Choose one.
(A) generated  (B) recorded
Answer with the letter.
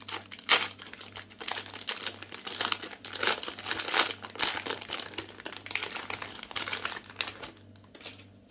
B